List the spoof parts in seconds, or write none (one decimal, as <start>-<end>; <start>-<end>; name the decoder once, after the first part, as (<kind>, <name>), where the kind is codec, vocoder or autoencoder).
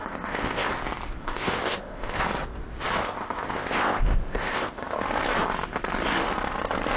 0.0-0.7 (codec, ZipCodec); 1.2-2.2; 3.0-5.0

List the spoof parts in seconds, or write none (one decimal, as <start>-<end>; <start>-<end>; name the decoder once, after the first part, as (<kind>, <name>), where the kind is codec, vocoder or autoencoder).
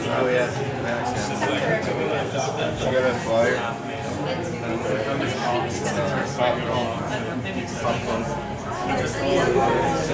2.2-3.0 (codec, SNAC)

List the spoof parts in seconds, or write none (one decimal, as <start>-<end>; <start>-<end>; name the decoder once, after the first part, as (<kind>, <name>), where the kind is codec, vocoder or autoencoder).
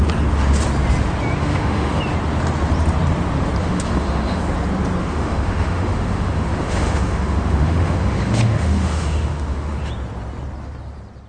1.4-2.0 (autoencoder, DAC-VAE); 3.6-4.4; 5.0-9.9